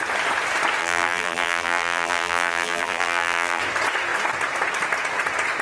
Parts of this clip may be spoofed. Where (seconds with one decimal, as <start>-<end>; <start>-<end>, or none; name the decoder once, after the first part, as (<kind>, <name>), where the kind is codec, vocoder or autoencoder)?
0.8-3.6 (vocoder, BigVGAN v2)